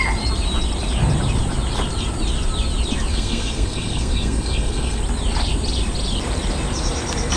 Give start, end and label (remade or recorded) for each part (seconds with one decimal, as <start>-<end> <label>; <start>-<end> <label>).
0.0-3.1 recorded; 3.1-5.0 remade; 5.0-7.4 recorded